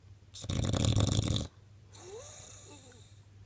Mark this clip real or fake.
real